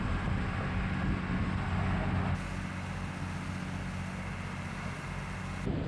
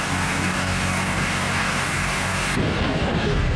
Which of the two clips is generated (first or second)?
second